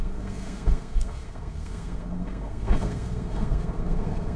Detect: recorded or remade remade